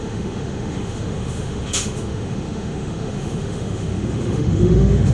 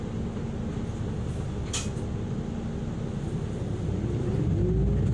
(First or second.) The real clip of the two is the second